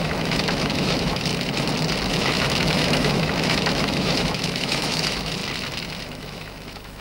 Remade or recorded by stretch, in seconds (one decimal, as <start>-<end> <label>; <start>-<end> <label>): 0.0-1.3 remade; 1.3-2.1 recorded; 2.1-5.4 remade; 5.4-6.0 recorded; 6.0-7.0 remade